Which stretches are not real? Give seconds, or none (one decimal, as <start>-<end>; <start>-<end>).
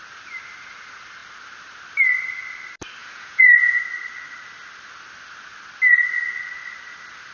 3.0-3.8